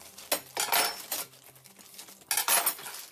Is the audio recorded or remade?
recorded